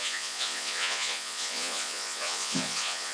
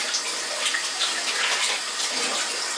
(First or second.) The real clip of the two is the second